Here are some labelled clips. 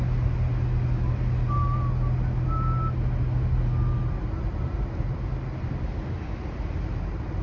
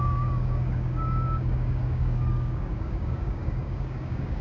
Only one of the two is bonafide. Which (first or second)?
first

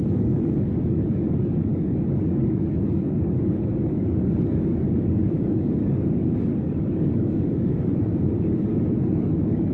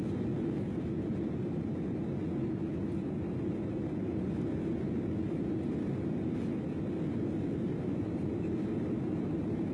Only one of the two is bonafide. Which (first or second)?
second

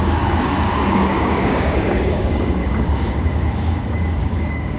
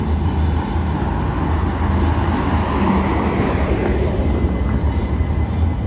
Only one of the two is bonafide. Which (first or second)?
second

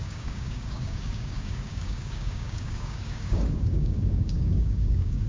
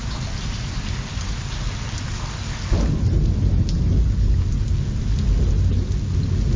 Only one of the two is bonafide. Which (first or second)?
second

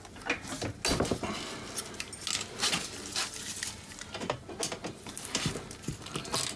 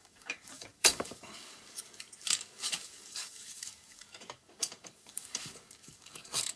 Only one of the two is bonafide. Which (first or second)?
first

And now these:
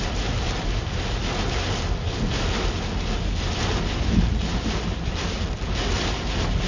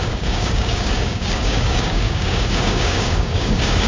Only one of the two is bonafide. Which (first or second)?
first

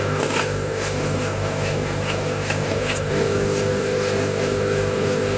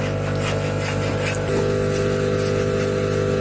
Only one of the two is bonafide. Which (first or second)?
second